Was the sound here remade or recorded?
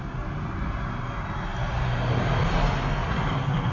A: recorded